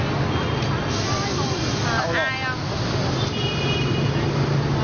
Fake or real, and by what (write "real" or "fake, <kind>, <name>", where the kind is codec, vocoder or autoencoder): real